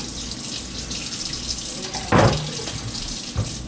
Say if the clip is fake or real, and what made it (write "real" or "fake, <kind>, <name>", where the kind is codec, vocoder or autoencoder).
real